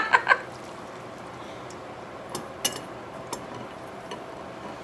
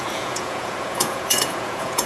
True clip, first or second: first